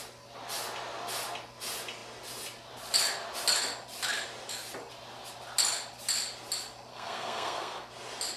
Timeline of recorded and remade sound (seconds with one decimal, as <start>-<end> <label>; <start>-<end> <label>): 0.0-6.9 recorded; 6.9-7.9 remade; 7.9-8.4 recorded